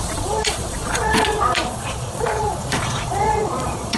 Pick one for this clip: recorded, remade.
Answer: remade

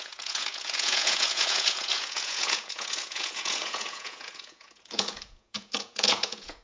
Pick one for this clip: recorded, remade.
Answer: remade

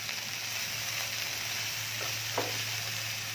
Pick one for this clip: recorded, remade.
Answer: recorded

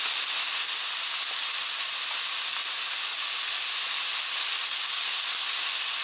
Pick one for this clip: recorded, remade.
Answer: recorded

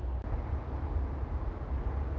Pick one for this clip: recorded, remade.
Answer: recorded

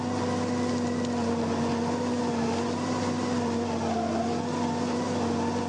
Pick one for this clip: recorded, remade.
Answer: recorded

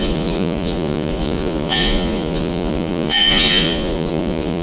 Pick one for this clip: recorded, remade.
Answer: remade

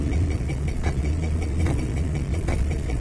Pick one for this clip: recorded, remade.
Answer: remade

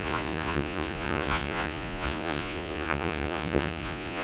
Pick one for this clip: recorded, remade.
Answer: remade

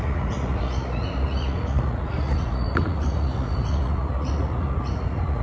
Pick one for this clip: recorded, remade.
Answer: remade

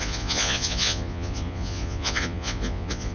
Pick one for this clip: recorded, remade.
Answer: remade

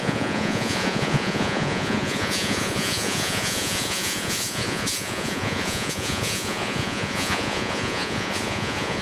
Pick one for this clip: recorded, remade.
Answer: remade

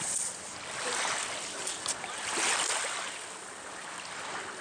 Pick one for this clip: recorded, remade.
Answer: recorded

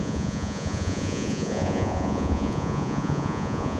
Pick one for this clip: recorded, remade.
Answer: remade